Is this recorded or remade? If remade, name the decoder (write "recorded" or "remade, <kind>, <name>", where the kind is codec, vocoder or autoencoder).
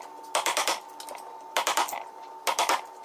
recorded